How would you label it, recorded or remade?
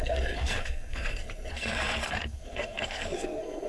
remade